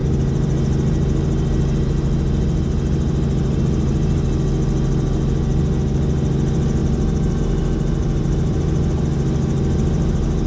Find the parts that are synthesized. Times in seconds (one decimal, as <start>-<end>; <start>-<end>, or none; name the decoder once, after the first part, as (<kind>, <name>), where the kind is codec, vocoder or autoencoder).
6.8-7.4 (vocoder, BigVGAN v2); 8.0-8.6